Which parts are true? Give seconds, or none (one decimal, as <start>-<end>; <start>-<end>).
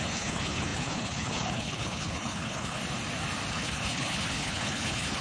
2.8-3.5